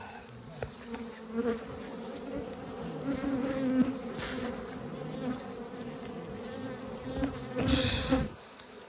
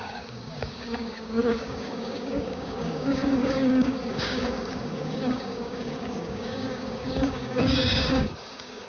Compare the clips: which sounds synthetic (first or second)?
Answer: second